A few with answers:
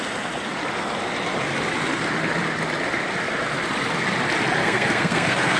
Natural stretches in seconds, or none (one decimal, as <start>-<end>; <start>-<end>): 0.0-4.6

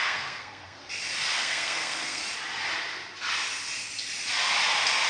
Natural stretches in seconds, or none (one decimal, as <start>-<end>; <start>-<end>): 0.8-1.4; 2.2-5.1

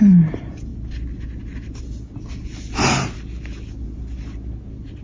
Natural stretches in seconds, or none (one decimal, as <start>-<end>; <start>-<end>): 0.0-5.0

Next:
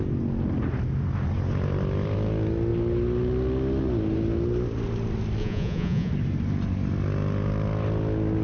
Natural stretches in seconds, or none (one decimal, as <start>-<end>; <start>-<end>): 0.0-5.4; 6.1-8.4

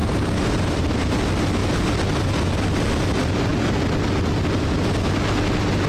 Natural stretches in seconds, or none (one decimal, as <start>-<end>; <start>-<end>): 0.8-5.9

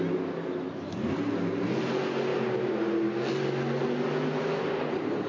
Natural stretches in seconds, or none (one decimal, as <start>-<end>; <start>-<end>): 0.0-5.3

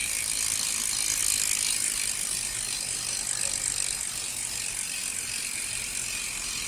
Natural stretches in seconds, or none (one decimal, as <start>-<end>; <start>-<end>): 0.0-6.7